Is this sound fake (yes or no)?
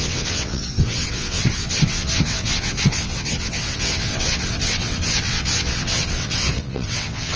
yes